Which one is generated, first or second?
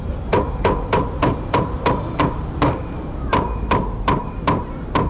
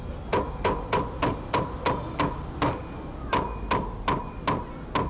first